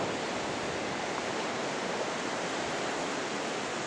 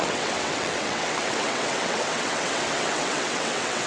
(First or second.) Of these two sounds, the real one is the first